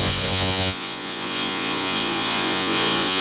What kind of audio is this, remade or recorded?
remade